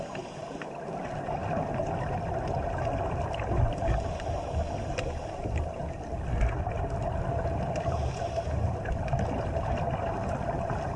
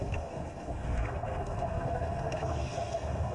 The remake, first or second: second